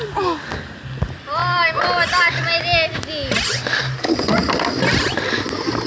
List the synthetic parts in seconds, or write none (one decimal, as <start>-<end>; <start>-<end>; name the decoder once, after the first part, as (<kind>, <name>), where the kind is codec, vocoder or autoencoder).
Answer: none